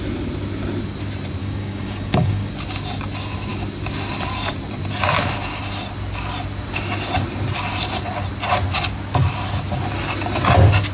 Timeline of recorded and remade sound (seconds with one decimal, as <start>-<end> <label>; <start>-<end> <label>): 0.0-1.4 recorded; 1.4-2.5 remade; 2.5-10.9 recorded